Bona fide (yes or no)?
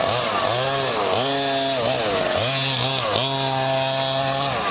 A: yes